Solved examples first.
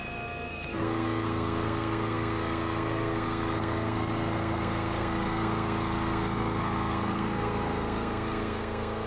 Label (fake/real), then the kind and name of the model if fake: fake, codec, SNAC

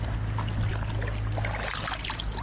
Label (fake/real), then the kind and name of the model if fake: real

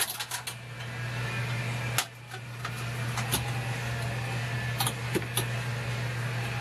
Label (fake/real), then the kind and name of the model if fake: real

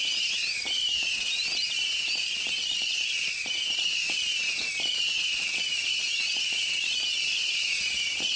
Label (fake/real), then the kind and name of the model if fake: fake, vocoder, BigVGAN v2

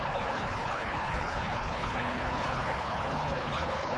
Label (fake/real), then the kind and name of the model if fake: fake, codec, HILCodec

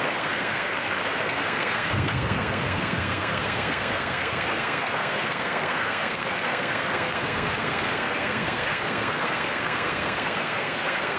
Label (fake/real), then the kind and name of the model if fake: fake, codec, SNAC